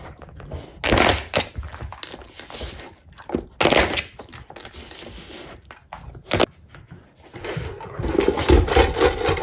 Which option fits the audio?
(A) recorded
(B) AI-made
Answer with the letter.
A